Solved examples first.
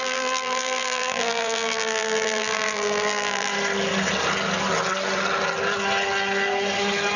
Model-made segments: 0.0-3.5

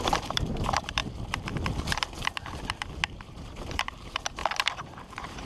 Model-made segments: 0.0-1.0; 3.3-4.4; 5.1-5.5